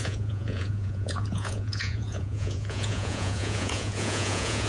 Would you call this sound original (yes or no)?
no